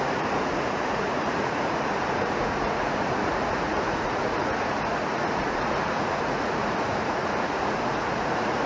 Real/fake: fake